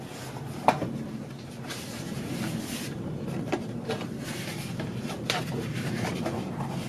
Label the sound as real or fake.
fake